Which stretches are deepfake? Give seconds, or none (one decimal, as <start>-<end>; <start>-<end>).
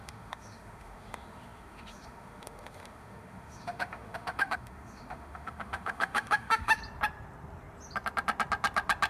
0.0-6.8